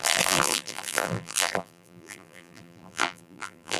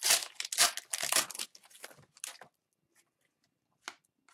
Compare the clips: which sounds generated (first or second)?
first